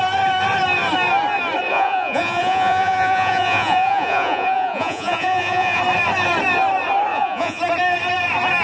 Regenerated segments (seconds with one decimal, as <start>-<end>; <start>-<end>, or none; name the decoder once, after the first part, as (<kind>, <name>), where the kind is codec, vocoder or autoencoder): 1.7-5.8 (vocoder, Vocos); 7.1-7.6